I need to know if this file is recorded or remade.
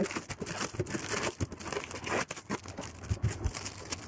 recorded